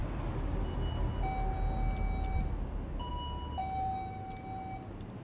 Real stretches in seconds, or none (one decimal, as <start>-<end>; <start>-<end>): 0.0-3.6; 4.3-5.2